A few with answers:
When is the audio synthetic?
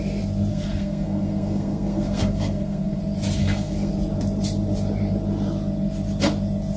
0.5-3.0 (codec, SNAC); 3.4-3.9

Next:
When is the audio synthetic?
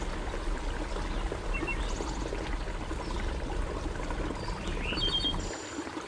none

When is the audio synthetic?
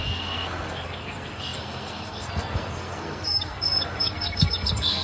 0.0-5.0 (codec, SNAC)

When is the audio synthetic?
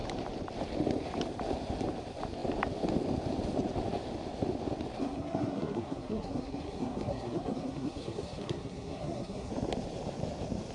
5.0-9.5 (codec, SNAC)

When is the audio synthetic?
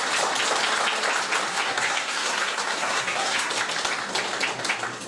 1.5-3.5 (codec, SNAC)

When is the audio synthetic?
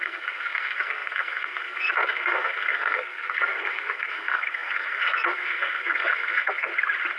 0.0-6.7 (codec, SNAC)